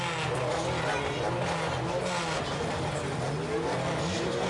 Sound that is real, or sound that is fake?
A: real